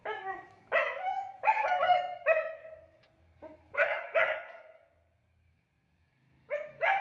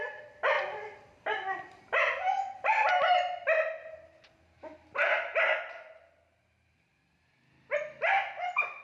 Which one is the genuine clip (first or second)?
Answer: second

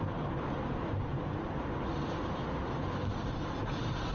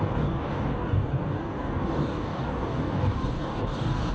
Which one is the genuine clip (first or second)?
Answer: first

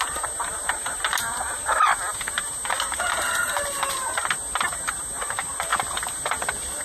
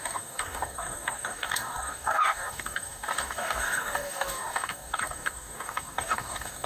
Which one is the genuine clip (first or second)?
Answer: first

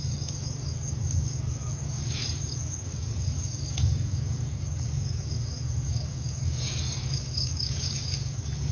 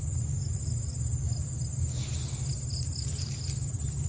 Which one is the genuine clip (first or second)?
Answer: second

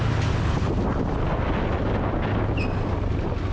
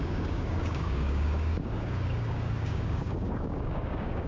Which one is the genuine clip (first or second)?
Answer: first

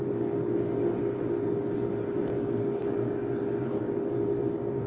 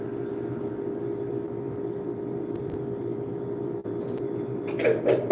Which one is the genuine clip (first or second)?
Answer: second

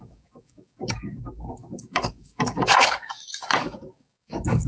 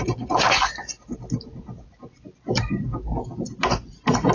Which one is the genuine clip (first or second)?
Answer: second